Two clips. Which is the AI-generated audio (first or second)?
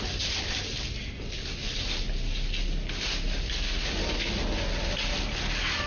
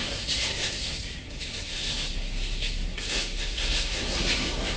second